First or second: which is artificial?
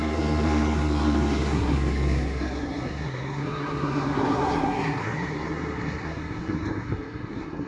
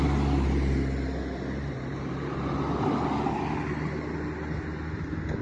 first